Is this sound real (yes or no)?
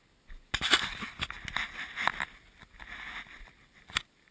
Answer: yes